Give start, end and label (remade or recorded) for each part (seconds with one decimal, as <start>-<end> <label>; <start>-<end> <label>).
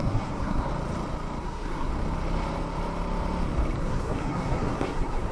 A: 0.0-0.7 remade; 0.7-1.4 recorded; 1.4-1.9 remade; 1.9-3.8 recorded; 3.8-5.3 remade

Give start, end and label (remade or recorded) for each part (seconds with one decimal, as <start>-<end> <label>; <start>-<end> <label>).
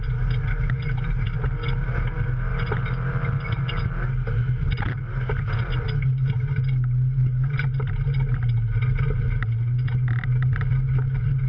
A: 0.0-11.5 recorded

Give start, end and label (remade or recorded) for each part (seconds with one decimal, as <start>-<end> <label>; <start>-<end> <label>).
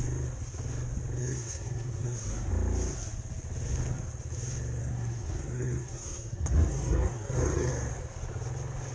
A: 0.0-1.2 recorded; 1.2-2.5 remade; 2.5-4.8 recorded; 4.8-7.7 remade; 7.7-8.9 recorded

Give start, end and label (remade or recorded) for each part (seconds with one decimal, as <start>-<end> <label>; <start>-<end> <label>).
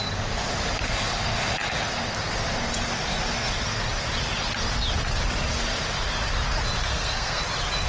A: 0.0-6.9 recorded; 6.9-7.4 remade; 7.4-7.9 recorded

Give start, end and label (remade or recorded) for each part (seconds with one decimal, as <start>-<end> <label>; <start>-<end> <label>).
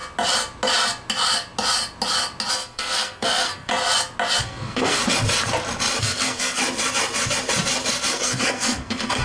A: 0.0-2.5 recorded; 2.5-3.7 remade; 3.7-4.4 recorded; 4.4-5.0 remade; 5.0-6.0 recorded; 6.0-6.6 remade; 6.6-8.1 recorded; 8.1-9.2 remade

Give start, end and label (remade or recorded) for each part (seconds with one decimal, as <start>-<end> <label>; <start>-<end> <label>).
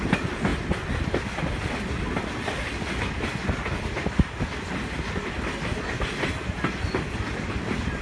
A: 0.0-8.0 recorded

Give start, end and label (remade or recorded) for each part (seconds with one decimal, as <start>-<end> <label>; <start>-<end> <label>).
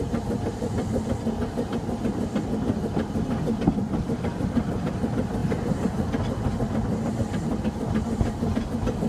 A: 0.0-9.1 recorded